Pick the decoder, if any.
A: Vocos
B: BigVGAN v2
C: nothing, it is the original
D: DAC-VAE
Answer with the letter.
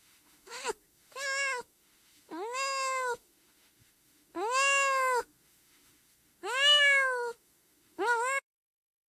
D